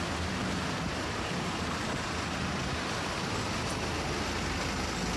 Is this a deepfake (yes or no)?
no